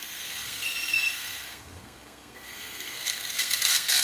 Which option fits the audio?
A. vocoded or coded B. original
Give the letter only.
A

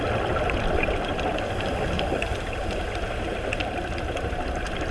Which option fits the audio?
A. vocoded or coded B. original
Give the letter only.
B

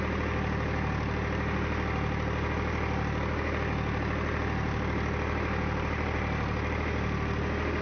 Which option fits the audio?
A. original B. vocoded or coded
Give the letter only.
A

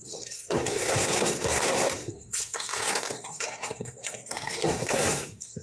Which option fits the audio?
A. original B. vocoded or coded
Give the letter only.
B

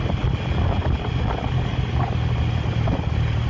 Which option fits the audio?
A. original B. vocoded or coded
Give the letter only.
A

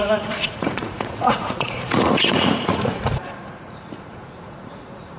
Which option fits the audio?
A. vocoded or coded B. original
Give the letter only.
A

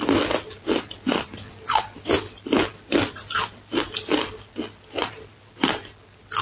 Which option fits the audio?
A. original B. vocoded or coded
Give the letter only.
A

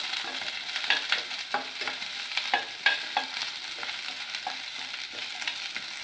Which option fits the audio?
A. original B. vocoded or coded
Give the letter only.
A